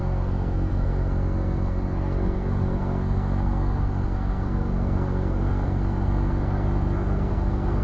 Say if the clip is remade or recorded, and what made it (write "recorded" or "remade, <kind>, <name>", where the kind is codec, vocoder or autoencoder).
remade, codec, SNAC